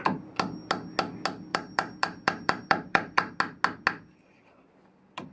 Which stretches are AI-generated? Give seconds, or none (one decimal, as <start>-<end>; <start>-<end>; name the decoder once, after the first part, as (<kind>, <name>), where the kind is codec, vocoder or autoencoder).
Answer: 1.5-3.4 (vocoder, BigVGAN v2)